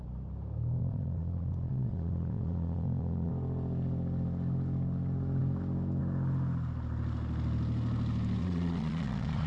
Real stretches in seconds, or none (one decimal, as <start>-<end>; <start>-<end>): 0.0-0.8; 3.3-8.4